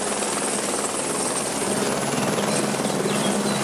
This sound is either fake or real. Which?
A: real